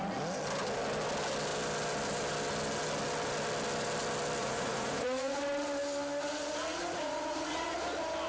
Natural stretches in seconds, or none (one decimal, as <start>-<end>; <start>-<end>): 0.0-4.4; 5.4-6.7; 7.8-8.3